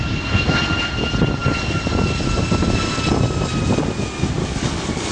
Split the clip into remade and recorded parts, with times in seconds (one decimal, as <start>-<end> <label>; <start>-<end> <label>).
0.0-4.4 recorded; 4.4-5.1 remade